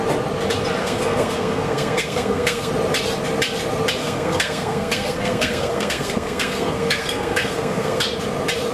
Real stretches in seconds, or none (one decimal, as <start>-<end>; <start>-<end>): 0.0-0.8; 2.7-4.0; 8.0-8.7

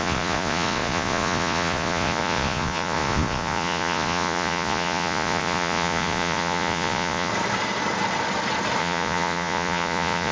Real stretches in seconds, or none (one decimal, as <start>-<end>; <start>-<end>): 7.3-8.8

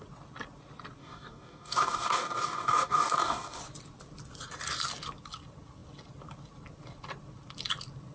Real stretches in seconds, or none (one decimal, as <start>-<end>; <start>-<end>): 0.0-1.0; 3.6-8.1

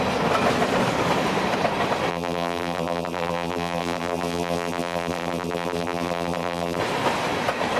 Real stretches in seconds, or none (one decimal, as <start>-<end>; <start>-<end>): 0.0-2.1; 6.8-7.8

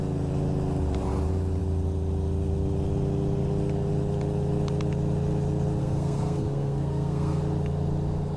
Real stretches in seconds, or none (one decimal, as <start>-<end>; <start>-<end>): 0.0-5.8; 7.4-8.4

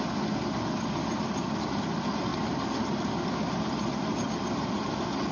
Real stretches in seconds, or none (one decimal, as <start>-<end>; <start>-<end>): 0.0-5.3